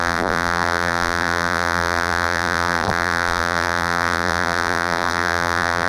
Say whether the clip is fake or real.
fake